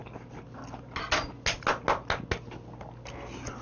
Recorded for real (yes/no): yes